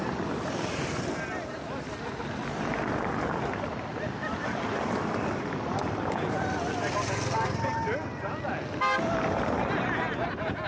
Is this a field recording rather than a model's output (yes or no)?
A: yes